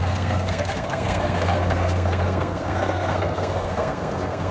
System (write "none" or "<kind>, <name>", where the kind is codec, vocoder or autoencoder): codec, SNAC